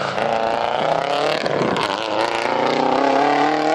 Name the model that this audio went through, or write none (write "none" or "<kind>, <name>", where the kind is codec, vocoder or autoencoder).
none